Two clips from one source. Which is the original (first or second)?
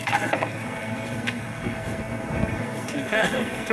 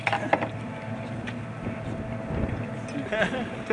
second